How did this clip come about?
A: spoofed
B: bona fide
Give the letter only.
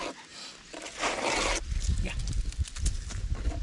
B